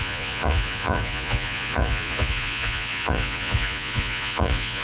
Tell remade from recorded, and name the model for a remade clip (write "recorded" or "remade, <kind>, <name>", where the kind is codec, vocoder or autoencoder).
remade, vocoder, Vocos